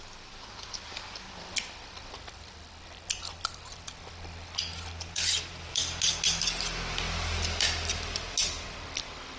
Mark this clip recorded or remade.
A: recorded